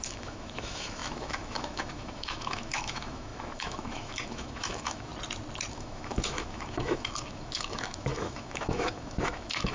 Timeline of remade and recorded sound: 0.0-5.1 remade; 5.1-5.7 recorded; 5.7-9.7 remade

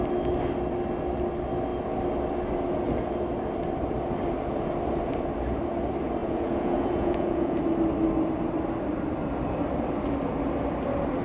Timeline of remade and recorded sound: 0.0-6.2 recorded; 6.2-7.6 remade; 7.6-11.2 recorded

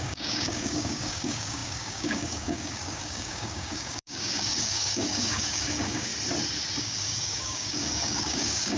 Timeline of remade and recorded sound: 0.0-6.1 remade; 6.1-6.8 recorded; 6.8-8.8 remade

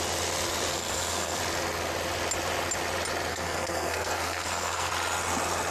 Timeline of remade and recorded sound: 0.0-0.7 recorded; 0.7-1.4 remade; 1.4-3.3 recorded; 3.3-4.9 remade; 4.9-5.7 recorded

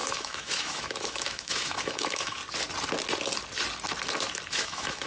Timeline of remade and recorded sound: 0.0-2.4 remade; 2.4-4.5 recorded; 4.5-5.1 remade